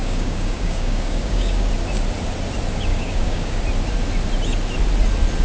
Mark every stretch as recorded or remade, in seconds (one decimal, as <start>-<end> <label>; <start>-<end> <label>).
0.0-1.7 remade; 1.7-2.9 recorded; 2.9-3.6 remade; 3.6-5.4 recorded